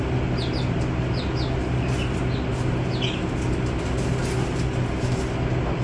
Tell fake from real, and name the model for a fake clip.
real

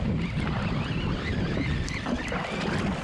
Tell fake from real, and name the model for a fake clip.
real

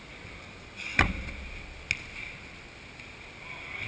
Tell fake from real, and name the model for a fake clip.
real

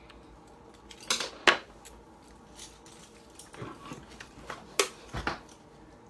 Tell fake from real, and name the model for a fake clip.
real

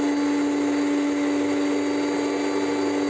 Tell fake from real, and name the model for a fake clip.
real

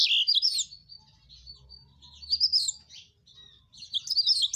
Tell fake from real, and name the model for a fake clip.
real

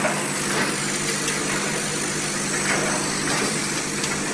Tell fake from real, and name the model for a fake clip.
real